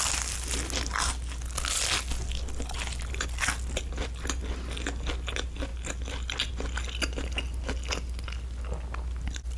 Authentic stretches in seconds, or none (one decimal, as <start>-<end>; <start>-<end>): 0.0-9.6